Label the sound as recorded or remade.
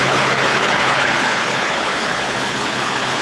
remade